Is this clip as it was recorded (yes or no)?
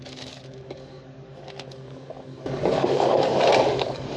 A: no